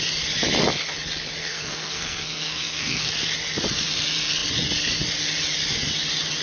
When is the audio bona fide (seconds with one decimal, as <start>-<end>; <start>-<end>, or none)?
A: 0.0-1.4; 3.1-6.4